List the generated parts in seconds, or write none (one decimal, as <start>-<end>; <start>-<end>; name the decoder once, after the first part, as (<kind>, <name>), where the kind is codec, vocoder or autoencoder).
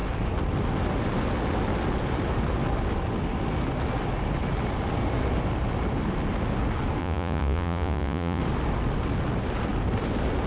7.0-8.4 (vocoder, Vocos)